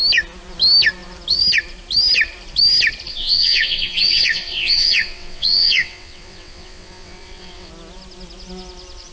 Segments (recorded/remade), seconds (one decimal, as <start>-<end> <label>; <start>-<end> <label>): 0.0-3.1 recorded; 3.1-7.7 remade; 7.7-9.1 recorded